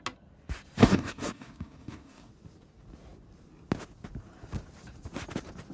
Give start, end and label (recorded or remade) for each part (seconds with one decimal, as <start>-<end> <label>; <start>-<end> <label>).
0.0-0.8 recorded; 0.8-2.3 remade; 2.3-5.7 recorded